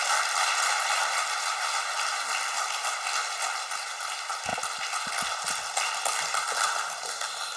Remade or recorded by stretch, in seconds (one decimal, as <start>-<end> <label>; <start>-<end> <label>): 0.0-7.6 recorded